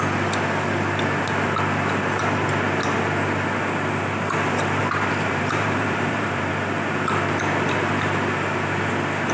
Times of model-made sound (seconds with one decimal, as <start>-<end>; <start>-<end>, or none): 4.8-6.5